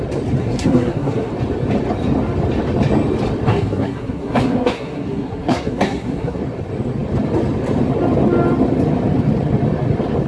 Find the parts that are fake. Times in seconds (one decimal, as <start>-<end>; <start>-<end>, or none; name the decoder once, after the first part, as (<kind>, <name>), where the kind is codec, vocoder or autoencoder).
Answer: 0.4-1.3 (codec, SNAC); 3.5-6.4

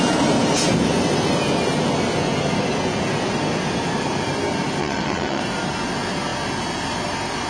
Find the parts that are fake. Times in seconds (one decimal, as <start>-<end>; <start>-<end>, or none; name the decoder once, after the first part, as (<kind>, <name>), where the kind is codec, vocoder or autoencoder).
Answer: 4.8-5.4 (vocoder, WaveNeXt)